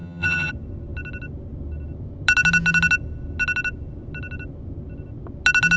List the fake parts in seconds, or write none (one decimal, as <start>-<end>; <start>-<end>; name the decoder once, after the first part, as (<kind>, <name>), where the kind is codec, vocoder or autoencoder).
0.0-0.5 (vocoder, HiFi-GAN)